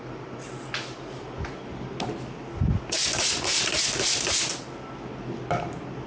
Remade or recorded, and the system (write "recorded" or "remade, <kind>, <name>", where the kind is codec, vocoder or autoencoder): recorded